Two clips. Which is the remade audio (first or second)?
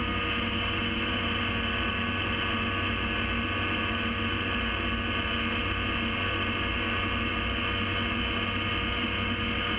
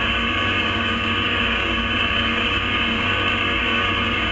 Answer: second